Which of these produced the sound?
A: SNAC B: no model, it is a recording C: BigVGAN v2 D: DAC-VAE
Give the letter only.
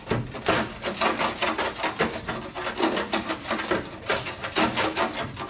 B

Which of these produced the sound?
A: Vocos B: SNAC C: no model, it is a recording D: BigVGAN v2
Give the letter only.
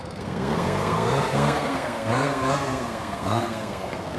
B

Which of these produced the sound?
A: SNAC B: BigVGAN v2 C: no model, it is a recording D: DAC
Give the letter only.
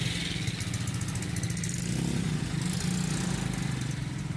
C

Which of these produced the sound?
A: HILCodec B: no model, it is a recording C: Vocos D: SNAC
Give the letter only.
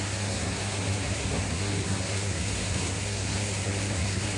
D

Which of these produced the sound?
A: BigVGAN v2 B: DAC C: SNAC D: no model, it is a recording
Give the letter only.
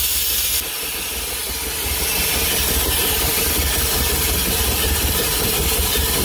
D